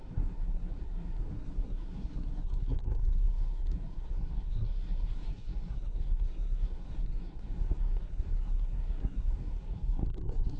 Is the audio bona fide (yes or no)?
no